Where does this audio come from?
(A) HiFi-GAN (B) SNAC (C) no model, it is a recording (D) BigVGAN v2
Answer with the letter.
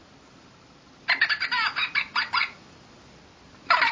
C